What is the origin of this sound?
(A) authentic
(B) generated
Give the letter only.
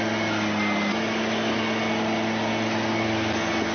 A